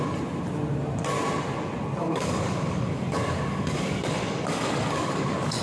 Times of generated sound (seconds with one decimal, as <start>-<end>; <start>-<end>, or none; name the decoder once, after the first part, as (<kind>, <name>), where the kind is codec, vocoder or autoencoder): 2.0-5.6 (codec, DAC)